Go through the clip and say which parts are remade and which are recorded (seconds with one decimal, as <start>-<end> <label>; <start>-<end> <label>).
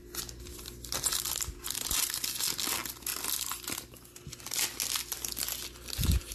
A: 0.0-6.3 recorded